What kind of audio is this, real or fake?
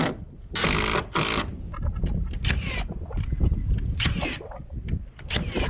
real